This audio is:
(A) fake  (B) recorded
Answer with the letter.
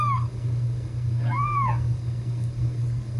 A